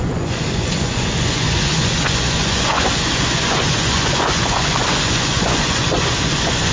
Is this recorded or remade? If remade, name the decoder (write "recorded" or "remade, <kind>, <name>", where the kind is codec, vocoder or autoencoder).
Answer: remade, vocoder, Vocos